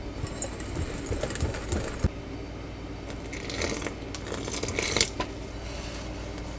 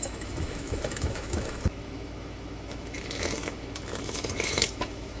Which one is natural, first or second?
first